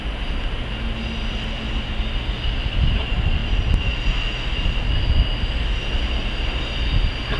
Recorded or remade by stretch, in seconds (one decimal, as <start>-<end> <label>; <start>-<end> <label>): 0.0-7.4 recorded